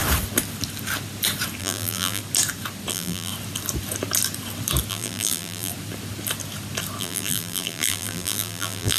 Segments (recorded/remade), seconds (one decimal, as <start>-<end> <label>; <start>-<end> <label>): 0.0-1.6 recorded; 1.6-2.2 remade; 2.2-2.9 recorded; 2.9-3.3 remade; 3.3-4.9 recorded; 4.9-5.7 remade; 5.7-7.0 recorded; 7.0-9.0 remade